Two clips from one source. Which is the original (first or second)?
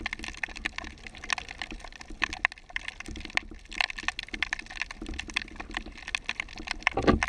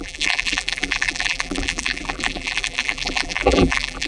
first